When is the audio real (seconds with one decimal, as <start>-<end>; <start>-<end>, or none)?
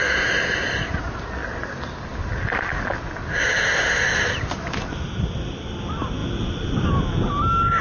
0.0-7.8